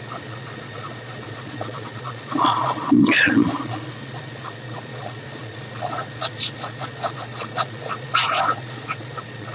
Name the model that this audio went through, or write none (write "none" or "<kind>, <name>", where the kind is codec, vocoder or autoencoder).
vocoder, Vocos